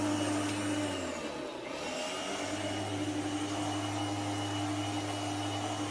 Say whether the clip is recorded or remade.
recorded